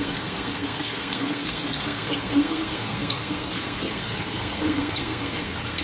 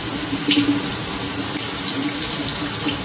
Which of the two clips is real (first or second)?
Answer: second